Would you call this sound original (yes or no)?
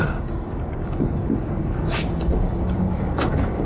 no